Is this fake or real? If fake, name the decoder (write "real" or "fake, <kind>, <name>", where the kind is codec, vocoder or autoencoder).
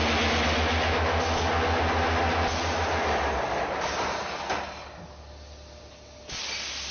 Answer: real